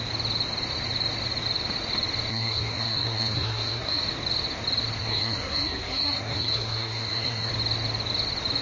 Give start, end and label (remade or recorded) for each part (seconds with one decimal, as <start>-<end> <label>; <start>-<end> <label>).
0.0-2.3 recorded; 2.3-4.0 remade; 4.0-5.0 recorded; 5.0-7.5 remade; 7.5-8.6 recorded